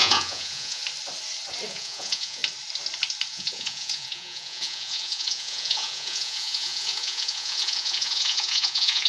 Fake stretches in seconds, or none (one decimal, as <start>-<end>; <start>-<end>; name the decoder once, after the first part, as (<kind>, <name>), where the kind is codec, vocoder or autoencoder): 0.0-0.8 (vocoder, Vocos); 1.7-2.4; 3.3-9.1